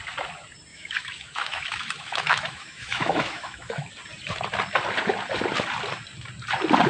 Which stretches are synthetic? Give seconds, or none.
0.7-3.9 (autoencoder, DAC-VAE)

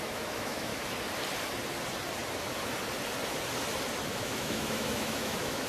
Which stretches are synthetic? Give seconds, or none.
0.0-0.7 (autoencoder, DAC-VAE); 4.1-5.7

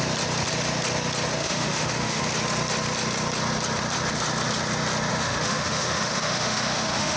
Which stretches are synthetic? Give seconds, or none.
1.4-2.2 (autoencoder, DAC-VAE); 5.1-7.2

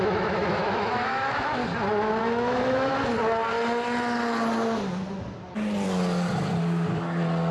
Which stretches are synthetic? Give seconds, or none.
0.0-1.6 (autoencoder, DAC-VAE); 2.2-2.9

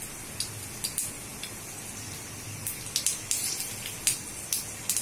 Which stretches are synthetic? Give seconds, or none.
none

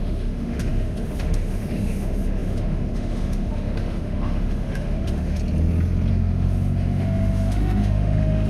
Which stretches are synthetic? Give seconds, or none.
0.0-5.4 (autoencoder, DAC-VAE); 6.1-8.5

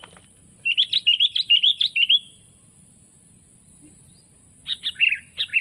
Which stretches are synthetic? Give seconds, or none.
none